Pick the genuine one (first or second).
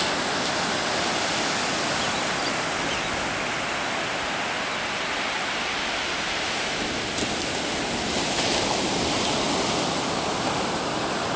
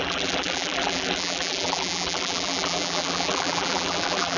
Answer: first